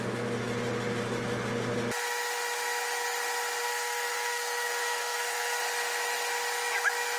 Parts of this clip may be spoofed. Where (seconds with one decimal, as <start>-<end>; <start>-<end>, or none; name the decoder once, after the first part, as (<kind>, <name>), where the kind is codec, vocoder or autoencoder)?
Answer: 3.6-5.6 (codec, SNAC)